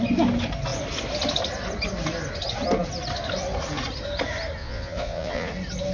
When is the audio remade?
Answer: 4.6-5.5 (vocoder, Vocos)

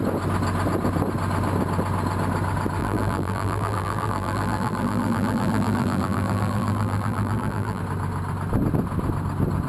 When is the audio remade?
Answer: 2.8-7.8 (vocoder, BigVGAN v2)

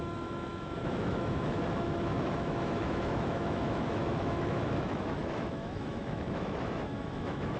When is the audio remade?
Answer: 0.0-7.6 (autoencoder, DAC-VAE)

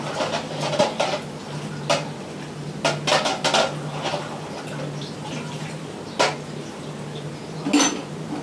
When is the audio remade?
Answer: none

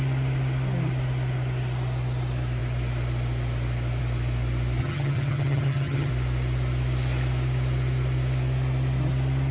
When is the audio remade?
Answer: 4.8-6.1 (vocoder, HiFi-GAN)

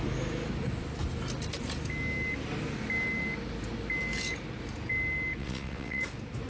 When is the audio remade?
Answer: 5.4-6.0 (vocoder, WaveNeXt)